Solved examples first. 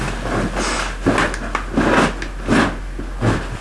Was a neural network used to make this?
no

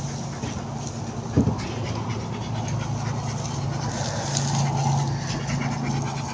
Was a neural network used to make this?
no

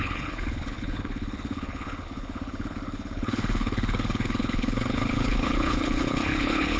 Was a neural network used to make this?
yes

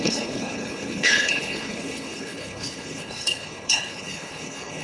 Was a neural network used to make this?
yes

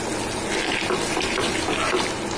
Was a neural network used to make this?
no